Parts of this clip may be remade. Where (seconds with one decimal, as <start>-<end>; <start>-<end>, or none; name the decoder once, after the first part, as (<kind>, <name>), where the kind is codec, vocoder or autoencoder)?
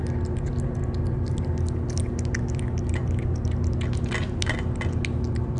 none